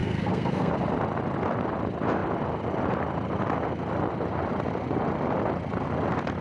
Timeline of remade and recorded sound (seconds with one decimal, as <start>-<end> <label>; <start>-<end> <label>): 0.0-0.7 remade; 0.7-6.4 recorded